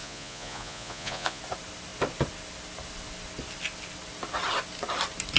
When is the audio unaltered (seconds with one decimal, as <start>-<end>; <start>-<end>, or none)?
1.4-5.4